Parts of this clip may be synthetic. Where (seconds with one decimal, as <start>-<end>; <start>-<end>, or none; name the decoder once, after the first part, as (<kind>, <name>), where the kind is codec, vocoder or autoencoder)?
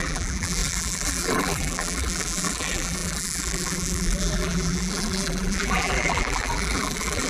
0.0-7.3 (vocoder, BigVGAN v2)